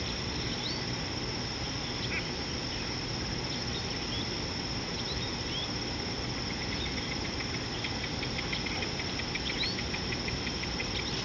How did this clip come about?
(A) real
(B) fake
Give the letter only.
A